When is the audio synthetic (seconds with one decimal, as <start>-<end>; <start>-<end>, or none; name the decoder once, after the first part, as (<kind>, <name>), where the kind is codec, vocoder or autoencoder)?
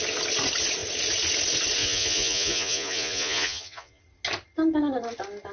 1.8-4.0 (vocoder, Vocos)